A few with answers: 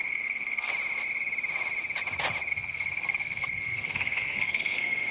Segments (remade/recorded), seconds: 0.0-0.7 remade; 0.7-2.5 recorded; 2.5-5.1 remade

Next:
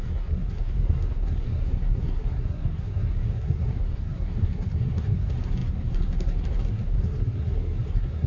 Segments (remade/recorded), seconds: 0.0-8.3 remade